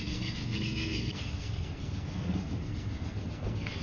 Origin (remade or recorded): remade